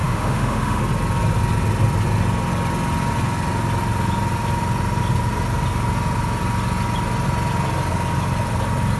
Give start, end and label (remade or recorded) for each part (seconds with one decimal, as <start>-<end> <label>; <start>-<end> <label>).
0.0-0.8 remade; 0.8-9.0 recorded